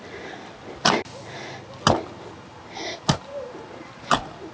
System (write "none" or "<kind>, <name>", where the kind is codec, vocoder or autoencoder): none